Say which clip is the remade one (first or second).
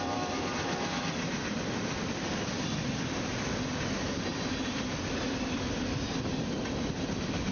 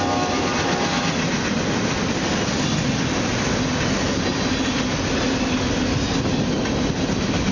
first